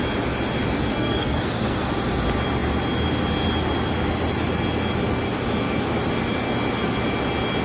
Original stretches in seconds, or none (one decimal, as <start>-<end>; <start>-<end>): 0.0-0.9; 1.9-7.6